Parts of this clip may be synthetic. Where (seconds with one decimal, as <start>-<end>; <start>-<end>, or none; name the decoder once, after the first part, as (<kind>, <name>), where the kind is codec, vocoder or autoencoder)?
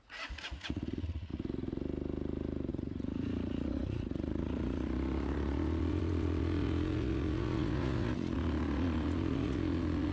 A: 0.0-1.3 (vocoder, Vocos); 2.7-10.1